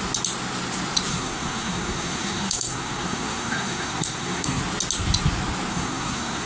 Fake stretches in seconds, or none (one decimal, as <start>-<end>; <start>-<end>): 1.1-4.6; 5.7-6.5